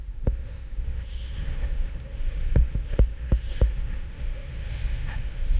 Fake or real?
fake